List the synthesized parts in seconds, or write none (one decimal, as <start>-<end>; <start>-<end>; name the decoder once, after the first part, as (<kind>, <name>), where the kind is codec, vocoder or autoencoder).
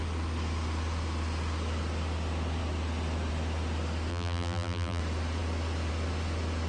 4.1-5.0 (vocoder, BigVGAN v2)